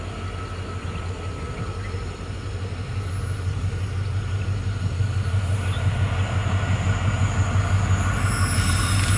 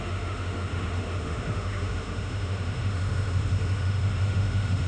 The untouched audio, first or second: first